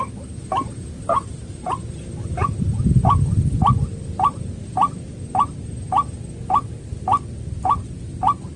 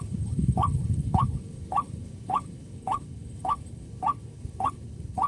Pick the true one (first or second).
first